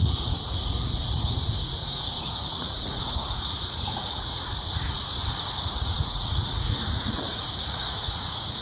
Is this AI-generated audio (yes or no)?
yes